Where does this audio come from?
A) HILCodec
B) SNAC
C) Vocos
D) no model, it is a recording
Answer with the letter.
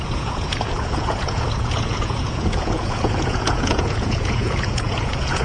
C